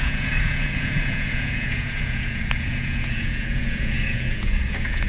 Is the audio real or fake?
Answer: fake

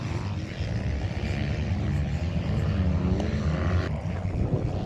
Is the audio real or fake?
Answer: real